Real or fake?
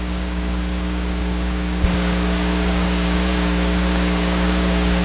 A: fake